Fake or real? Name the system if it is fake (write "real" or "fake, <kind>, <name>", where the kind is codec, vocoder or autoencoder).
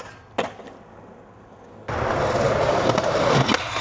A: real